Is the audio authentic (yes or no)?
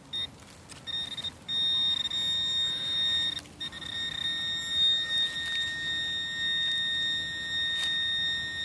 yes